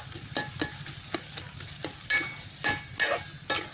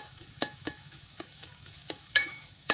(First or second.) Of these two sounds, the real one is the first